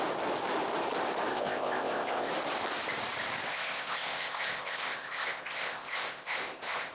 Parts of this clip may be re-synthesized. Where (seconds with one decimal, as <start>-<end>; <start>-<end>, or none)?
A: 1.3-2.3; 3.5-6.9